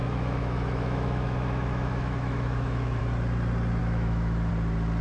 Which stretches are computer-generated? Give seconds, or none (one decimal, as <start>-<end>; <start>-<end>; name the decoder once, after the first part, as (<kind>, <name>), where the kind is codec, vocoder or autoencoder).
0.0-3.0 (autoencoder, DAC-VAE); 3.8-4.5